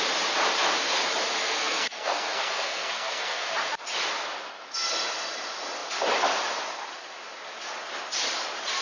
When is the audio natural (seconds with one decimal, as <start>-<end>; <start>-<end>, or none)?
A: 0.0-1.4; 3.5-8.8